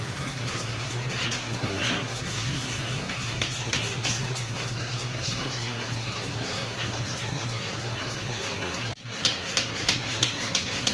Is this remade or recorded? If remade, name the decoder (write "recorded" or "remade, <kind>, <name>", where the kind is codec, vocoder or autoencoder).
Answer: remade, codec, SNAC